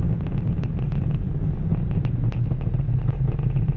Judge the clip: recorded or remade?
recorded